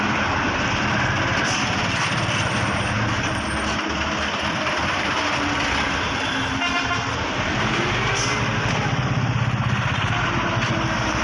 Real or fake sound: real